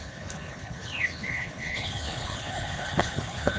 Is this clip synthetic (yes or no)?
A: yes